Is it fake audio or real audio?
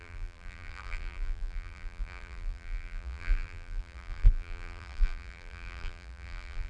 fake